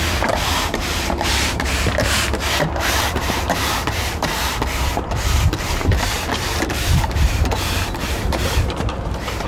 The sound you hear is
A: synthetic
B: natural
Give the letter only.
A